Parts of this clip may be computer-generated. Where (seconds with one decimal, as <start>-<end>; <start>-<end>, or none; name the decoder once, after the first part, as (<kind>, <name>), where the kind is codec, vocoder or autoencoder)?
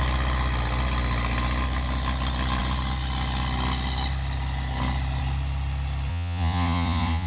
6.1-7.3 (vocoder, Vocos)